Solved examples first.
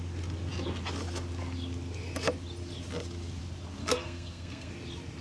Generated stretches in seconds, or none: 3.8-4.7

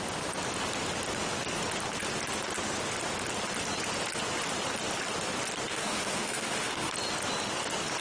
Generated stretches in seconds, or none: 5.7-6.9

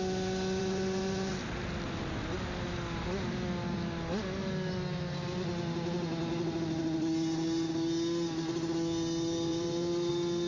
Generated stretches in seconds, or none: 0.6-1.3; 9.5-10.1

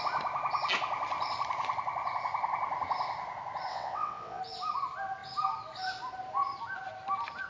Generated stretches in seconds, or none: 3.7-4.4

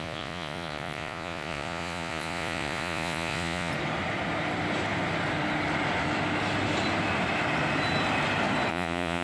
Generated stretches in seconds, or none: 0.0-3.7; 8.7-9.2

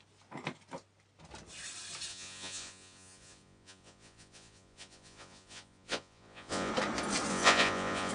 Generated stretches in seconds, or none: 2.1-6.7; 7.3-8.1

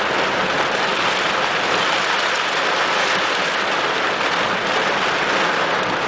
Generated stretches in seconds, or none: none

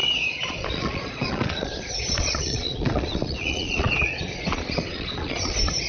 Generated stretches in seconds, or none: 0.0-5.9